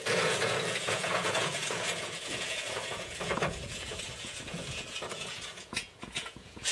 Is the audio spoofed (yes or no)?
yes